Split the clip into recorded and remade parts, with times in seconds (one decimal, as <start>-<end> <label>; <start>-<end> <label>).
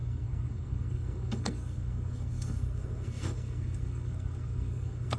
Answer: 0.0-5.2 remade